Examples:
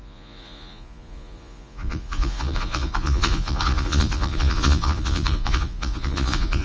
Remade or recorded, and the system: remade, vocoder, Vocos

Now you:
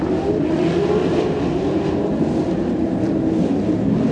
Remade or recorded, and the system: recorded